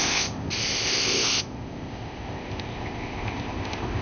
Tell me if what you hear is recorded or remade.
remade